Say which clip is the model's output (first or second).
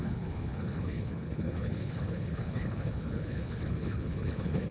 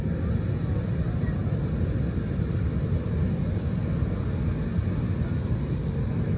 first